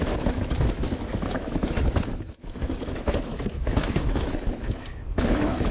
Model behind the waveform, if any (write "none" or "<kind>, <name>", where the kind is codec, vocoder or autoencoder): autoencoder, DAC-VAE